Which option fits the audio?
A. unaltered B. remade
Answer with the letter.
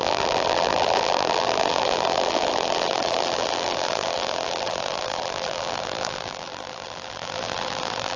B